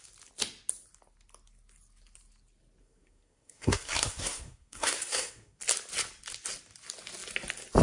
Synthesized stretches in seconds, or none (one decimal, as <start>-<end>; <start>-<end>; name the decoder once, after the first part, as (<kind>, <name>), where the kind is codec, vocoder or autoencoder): 2.8-5.6 (codec, SNAC)